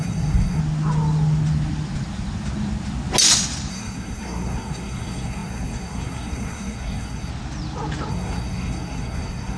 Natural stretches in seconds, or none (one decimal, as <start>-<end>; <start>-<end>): 0.6-3.7; 7.3-8.1